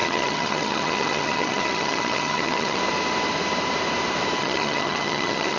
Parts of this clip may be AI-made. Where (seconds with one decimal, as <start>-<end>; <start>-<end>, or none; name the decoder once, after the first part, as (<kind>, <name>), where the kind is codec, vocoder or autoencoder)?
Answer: 0.0-2.8 (vocoder, HiFi-GAN); 4.4-5.6